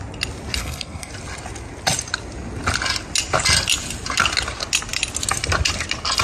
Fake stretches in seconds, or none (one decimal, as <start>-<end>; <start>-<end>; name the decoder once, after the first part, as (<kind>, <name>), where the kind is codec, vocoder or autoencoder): 0.6-1.1 (codec, SNAC)